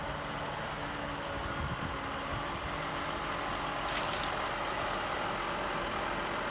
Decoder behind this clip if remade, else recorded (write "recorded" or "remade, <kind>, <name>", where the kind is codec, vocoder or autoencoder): recorded